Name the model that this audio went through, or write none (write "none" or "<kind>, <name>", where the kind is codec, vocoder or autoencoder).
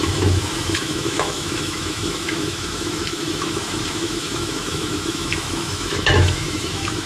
autoencoder, DAC-VAE